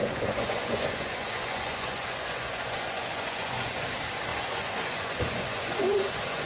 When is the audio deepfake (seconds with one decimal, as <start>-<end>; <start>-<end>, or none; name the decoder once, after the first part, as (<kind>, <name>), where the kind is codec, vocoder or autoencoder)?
0.0-3.9 (vocoder, Vocos); 4.3-6.5